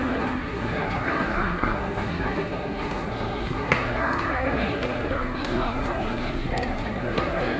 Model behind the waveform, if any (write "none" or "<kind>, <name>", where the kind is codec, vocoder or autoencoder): codec, SNAC